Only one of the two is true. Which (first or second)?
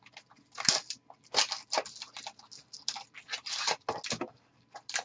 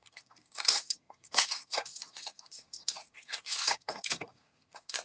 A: first